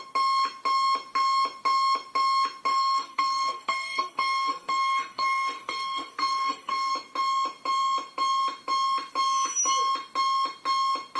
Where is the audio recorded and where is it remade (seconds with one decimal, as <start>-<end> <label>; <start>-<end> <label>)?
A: 0.0-2.7 recorded; 2.7-6.9 remade; 6.9-11.2 recorded